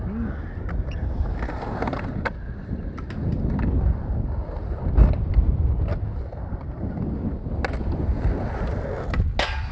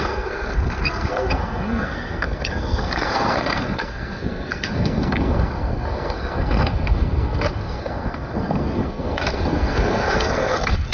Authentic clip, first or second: first